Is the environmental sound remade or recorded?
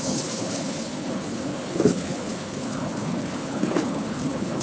remade